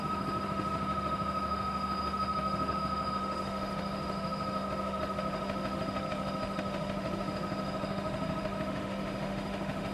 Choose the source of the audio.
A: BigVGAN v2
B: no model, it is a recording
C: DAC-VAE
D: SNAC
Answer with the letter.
C